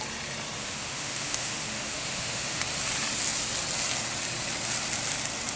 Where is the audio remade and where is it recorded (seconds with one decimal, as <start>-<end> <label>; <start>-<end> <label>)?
0.0-0.6 recorded; 0.6-2.6 remade; 2.6-5.6 recorded